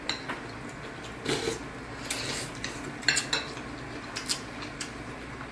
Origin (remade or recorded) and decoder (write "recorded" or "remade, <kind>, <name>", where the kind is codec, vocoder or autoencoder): recorded